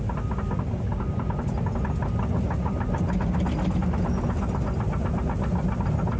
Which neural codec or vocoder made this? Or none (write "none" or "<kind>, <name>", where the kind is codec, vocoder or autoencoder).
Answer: none